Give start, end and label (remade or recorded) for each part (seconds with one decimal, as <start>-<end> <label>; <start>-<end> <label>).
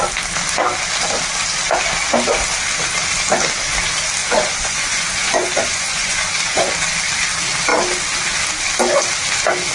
0.0-4.2 recorded; 4.2-6.7 remade; 6.7-9.7 recorded